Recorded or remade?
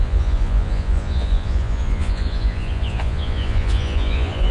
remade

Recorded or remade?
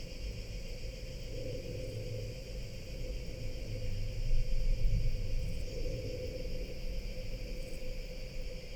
recorded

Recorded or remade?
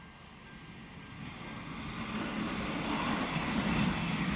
recorded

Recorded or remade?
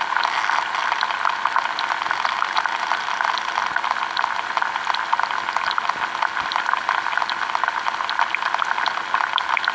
recorded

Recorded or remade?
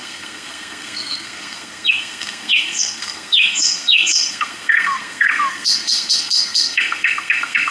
remade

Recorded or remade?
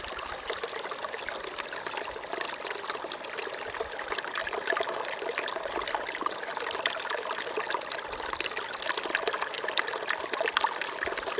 recorded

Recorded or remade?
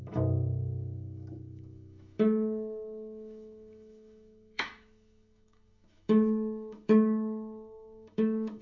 remade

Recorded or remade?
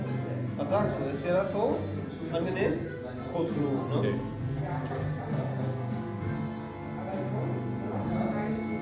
recorded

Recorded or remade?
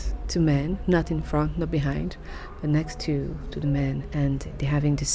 recorded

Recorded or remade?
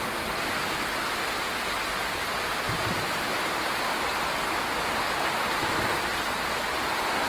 recorded